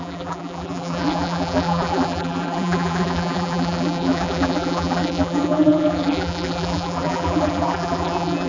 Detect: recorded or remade remade